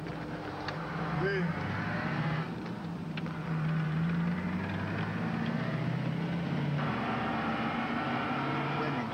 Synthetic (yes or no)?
no